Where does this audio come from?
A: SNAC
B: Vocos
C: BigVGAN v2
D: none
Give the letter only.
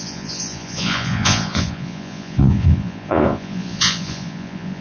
B